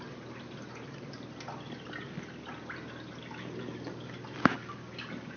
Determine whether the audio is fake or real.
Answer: real